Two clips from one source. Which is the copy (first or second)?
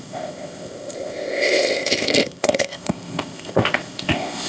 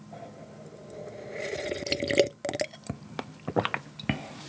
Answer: first